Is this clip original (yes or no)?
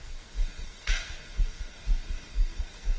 no